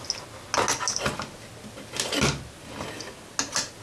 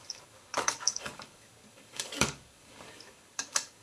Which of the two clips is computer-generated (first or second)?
second